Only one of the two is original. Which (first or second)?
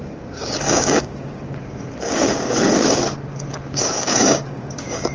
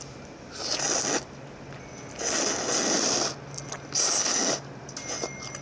second